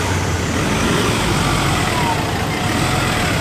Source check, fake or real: real